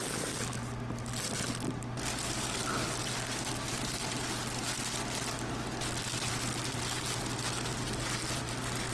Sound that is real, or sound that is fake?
real